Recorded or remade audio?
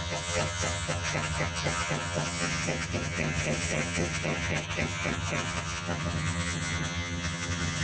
remade